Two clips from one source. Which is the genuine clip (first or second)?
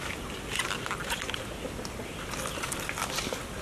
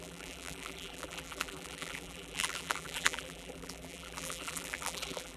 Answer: first